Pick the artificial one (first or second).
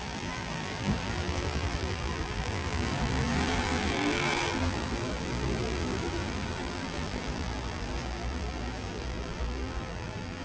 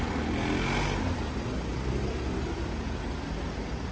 first